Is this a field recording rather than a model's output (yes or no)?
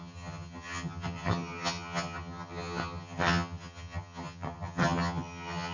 no